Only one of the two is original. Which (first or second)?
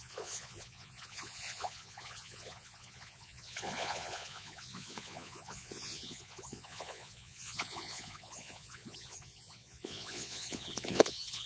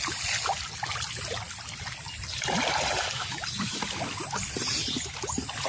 second